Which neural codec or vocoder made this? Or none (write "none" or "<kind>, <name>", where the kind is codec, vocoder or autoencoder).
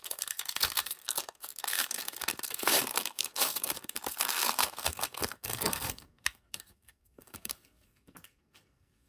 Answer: codec, SNAC